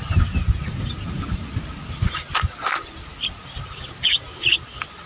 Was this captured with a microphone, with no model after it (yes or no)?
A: yes